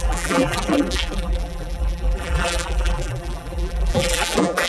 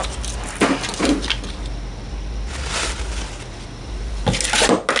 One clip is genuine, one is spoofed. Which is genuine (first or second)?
second